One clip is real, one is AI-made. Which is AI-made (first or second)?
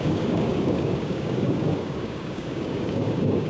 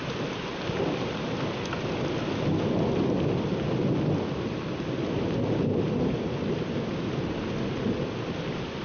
first